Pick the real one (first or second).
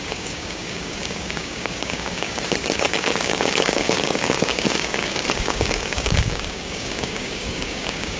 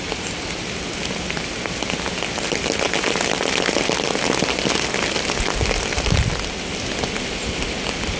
second